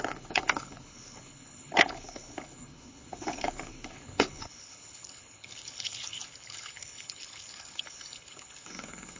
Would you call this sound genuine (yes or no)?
no